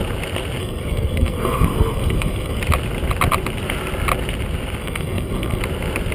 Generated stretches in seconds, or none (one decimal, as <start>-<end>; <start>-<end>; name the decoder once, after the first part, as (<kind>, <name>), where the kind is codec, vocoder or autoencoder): 0.6-2.6 (codec, SNAC); 4.8-5.6